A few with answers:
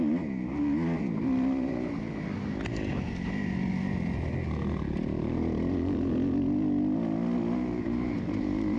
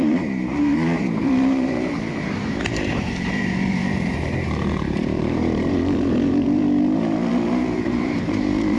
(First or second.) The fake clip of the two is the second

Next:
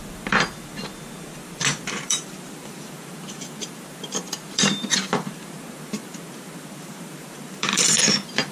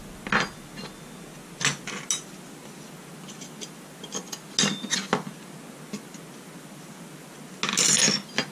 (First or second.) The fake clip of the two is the first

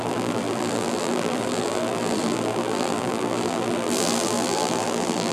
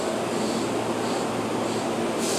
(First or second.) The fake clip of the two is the first